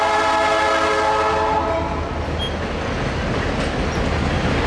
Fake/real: real